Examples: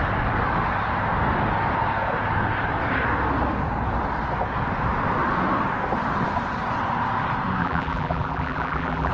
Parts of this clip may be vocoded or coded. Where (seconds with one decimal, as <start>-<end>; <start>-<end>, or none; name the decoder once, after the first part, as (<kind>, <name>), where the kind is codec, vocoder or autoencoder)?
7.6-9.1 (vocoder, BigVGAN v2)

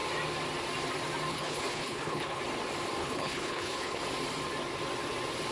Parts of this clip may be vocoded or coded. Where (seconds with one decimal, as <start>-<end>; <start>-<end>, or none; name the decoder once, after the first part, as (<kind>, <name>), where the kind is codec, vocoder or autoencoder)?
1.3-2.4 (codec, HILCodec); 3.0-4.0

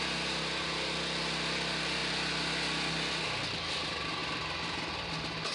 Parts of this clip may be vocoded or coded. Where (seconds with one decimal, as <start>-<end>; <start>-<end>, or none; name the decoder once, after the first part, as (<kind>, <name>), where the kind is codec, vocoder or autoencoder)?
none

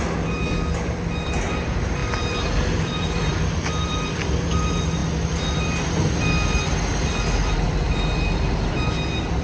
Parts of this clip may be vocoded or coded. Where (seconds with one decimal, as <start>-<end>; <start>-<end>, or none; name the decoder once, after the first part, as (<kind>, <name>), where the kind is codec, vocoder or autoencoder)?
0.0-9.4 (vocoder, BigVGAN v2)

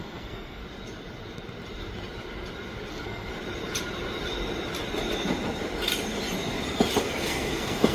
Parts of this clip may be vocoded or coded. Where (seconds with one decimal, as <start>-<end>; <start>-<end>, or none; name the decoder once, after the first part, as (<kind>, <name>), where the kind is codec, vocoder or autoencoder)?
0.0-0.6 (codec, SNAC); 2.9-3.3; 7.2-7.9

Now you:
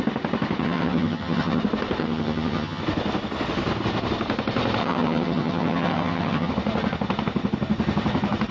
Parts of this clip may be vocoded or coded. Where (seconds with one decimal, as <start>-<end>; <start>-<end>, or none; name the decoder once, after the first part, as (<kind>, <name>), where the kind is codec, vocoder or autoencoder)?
0.6-1.6 (vocoder, HiFi-GAN); 2.0-2.8; 4.8-6.5